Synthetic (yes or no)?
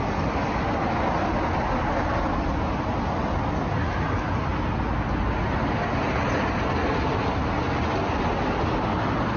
no